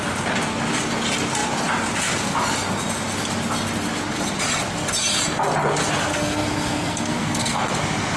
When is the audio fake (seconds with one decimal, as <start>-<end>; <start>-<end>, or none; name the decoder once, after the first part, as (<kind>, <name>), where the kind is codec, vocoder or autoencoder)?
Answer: 6.1-7.7 (codec, SNAC)